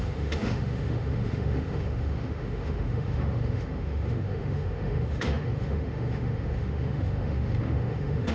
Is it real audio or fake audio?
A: fake